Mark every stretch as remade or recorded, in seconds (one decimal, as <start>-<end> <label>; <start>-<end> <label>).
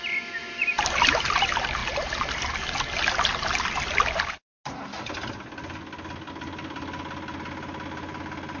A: 0.0-0.4 recorded; 0.4-1.3 remade; 1.3-8.6 recorded